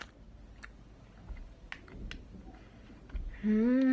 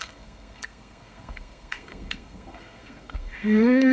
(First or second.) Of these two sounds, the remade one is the second